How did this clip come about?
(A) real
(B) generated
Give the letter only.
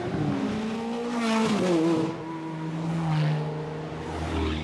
A